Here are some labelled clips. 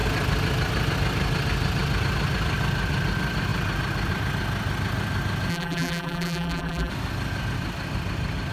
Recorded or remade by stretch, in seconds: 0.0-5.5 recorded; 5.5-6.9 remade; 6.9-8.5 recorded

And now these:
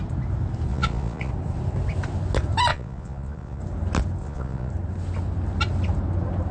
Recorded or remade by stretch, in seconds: 0.0-0.7 recorded; 0.7-1.3 remade; 1.3-2.7 recorded; 2.7-3.6 remade; 3.6-4.2 recorded; 4.2-4.7 remade; 4.7-6.5 recorded

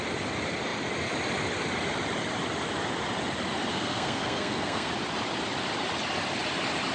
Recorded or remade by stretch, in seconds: 0.0-3.7 recorded; 3.7-4.9 remade; 4.9-6.9 recorded

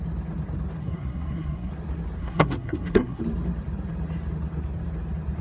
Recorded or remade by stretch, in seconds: 0.0-0.8 recorded; 0.8-1.7 remade; 1.7-2.2 recorded; 2.2-3.2 remade; 3.2-5.4 recorded